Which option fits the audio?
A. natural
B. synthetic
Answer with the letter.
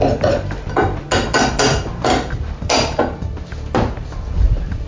A